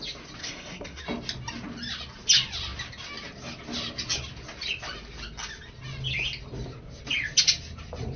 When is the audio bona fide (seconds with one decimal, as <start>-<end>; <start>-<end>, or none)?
0.0-0.4; 1.0-8.2